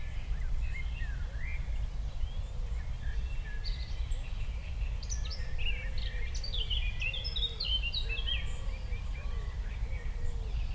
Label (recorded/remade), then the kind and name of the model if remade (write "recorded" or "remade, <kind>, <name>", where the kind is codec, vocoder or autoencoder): recorded